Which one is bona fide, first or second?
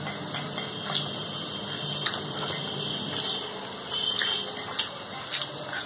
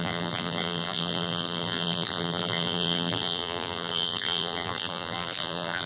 first